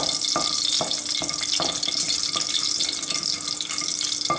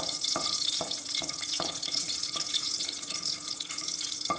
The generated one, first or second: second